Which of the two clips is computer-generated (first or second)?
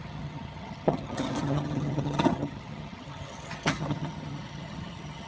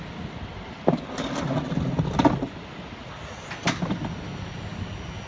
first